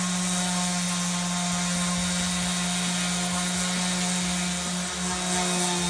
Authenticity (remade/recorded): recorded